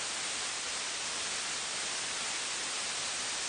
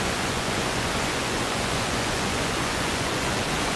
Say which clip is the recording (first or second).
first